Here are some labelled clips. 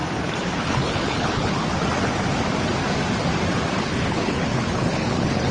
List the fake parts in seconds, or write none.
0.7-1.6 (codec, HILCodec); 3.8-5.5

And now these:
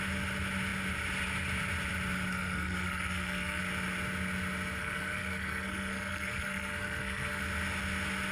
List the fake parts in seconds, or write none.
2.3-3.6 (codec, SNAC); 4.8-7.4